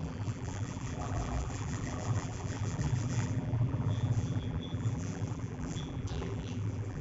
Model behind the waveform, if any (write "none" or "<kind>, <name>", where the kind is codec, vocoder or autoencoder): vocoder, BigVGAN v2